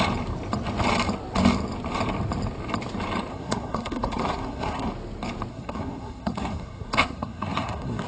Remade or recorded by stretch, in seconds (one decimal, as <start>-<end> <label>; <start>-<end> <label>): 0.0-3.3 recorded; 3.3-4.9 remade; 4.9-5.5 recorded; 5.5-8.1 remade